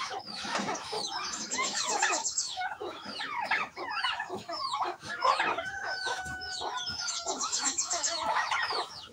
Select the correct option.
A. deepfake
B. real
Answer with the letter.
A